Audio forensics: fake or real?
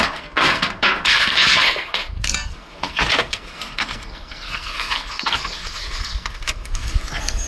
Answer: fake